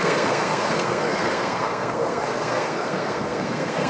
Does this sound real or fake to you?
fake